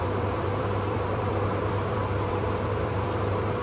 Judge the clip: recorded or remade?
remade